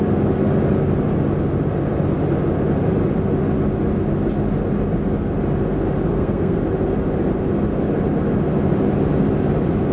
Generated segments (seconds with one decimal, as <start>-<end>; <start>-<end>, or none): 6.1-6.6